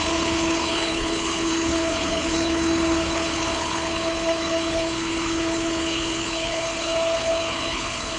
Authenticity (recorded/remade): remade